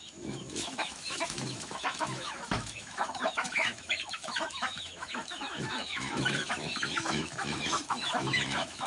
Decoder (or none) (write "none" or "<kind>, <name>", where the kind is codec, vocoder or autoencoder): autoencoder, DAC-VAE